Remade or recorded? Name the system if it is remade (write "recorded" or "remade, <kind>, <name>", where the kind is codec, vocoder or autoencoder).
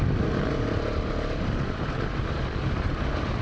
recorded